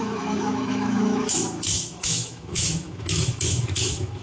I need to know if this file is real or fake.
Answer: fake